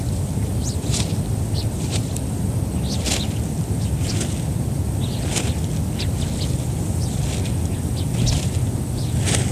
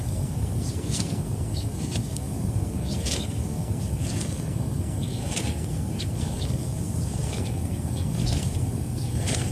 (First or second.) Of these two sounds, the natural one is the first